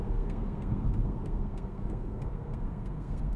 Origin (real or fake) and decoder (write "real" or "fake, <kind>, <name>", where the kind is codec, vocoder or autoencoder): fake, codec, SNAC